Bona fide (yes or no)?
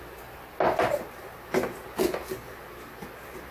yes